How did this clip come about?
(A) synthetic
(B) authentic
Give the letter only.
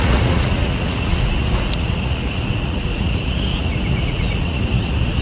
A